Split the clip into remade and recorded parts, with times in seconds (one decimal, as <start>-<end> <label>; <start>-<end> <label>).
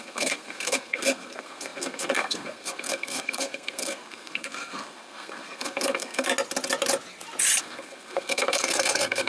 0.0-6.3 remade; 6.3-7.6 recorded; 7.6-9.3 remade